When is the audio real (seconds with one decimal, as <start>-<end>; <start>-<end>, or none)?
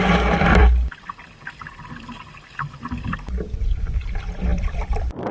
0.6-3.8